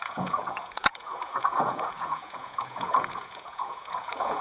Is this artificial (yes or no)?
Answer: yes